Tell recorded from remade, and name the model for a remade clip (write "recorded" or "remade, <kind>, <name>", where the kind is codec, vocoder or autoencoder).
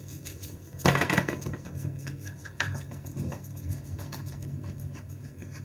remade, codec, SNAC